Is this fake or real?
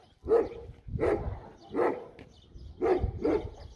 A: real